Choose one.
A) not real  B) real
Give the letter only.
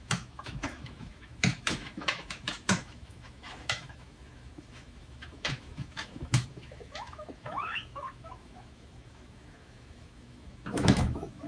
A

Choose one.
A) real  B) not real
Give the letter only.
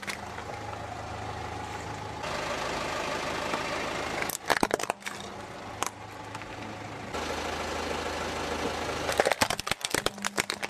A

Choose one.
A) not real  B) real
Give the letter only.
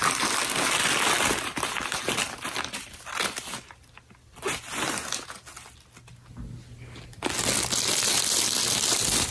B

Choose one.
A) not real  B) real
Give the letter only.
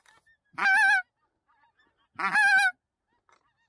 B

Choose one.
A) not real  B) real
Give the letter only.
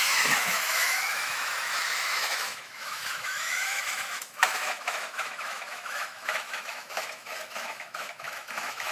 A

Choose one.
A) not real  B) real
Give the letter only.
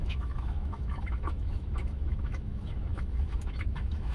A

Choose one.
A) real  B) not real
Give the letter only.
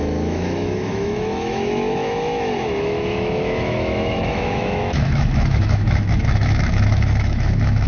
B